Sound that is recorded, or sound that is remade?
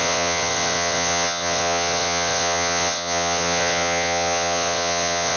remade